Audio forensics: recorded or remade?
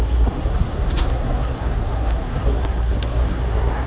remade